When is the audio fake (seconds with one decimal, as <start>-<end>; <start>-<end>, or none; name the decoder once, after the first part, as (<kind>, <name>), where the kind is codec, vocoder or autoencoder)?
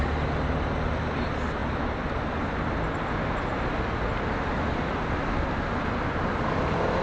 none